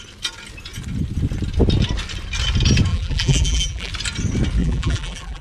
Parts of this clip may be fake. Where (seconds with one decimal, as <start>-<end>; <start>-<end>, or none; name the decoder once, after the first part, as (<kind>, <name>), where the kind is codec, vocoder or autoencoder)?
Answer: 2.9-3.9 (vocoder, BigVGAN v2); 4.6-5.4